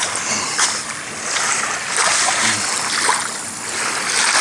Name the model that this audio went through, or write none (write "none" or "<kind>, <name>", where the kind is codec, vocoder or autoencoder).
none